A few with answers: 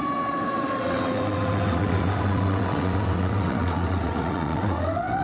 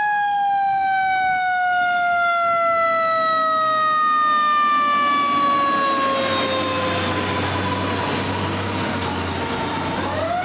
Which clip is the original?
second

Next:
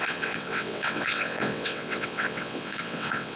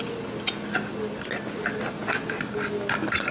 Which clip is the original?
second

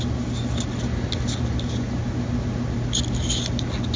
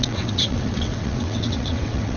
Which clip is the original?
first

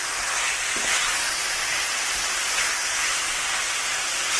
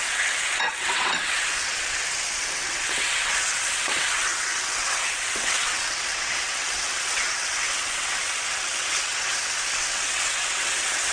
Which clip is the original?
first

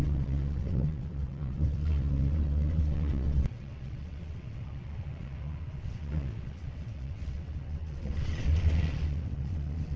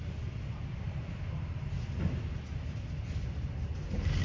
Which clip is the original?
second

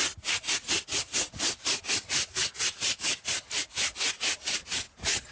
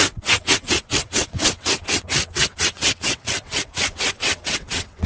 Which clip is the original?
first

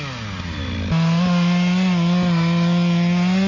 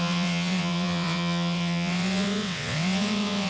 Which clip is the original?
first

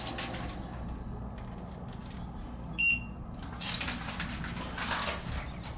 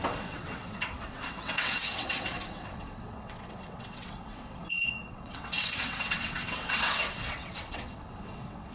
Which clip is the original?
first